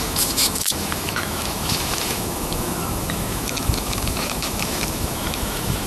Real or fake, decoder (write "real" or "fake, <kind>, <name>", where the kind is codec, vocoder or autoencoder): fake, autoencoder, DAC-VAE